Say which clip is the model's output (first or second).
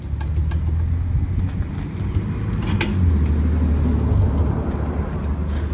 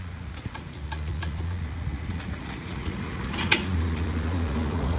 second